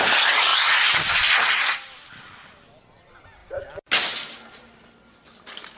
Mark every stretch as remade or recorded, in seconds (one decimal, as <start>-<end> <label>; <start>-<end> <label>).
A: 0.0-5.8 recorded